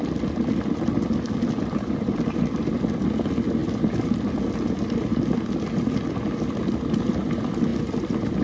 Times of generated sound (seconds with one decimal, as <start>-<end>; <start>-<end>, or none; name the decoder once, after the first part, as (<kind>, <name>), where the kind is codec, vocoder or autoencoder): none